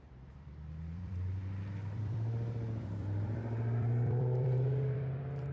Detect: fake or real fake